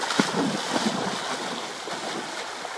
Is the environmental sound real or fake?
real